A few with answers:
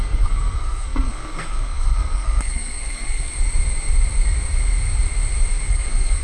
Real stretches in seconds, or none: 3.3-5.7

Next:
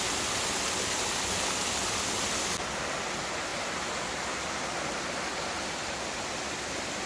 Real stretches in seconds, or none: 0.0-7.1